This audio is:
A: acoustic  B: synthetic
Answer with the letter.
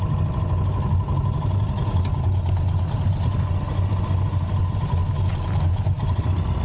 A